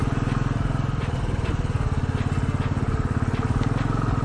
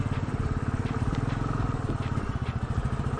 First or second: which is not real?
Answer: second